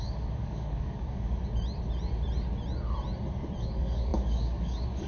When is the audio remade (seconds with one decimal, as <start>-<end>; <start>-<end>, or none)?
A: 0.0-1.4; 3.6-5.1